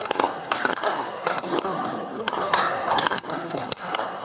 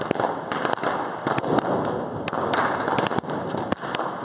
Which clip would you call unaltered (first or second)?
second